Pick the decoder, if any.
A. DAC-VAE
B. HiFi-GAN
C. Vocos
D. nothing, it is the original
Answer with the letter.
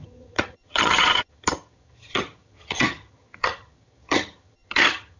B